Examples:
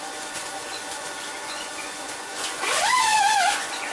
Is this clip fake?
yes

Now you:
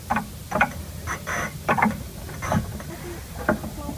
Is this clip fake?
no